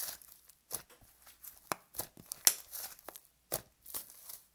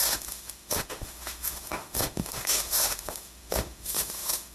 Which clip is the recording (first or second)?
first